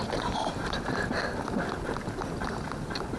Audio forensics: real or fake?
real